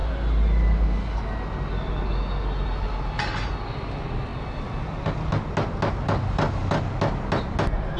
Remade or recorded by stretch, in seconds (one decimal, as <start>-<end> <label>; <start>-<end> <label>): 0.0-8.0 recorded